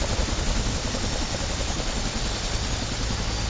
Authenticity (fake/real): real